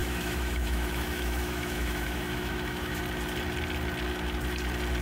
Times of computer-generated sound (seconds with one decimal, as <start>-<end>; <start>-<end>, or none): 0.0-3.0

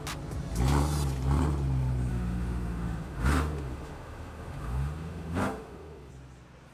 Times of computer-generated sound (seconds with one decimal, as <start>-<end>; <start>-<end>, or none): 2.1-6.1

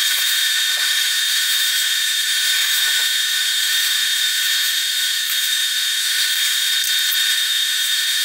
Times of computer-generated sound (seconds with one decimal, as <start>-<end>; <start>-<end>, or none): 0.0-6.7; 7.3-8.2

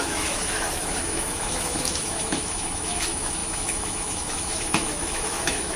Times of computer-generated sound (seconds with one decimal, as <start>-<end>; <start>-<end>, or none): 0.0-5.8

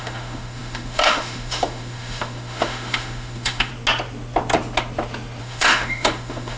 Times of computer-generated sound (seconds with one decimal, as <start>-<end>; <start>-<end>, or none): 0.0-3.7; 5.4-6.6

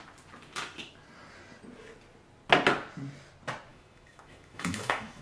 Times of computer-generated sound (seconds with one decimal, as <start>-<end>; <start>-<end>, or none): 3.7-5.2

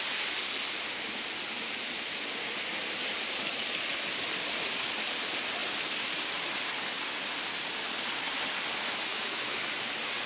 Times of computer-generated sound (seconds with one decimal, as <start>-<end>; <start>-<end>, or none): 9.1-9.6

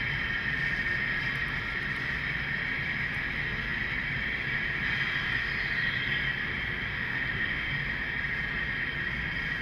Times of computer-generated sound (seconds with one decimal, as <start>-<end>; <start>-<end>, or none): 6.9-7.7